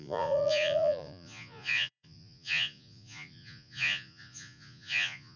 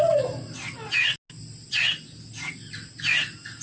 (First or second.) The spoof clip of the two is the first